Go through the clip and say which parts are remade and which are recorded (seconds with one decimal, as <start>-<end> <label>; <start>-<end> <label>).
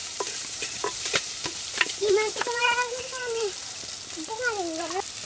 0.0-3.2 remade; 3.2-5.3 recorded